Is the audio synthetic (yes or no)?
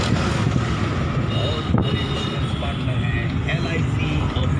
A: no